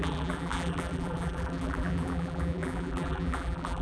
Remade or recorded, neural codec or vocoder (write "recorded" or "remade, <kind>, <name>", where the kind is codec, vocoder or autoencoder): remade, vocoder, BigVGAN v2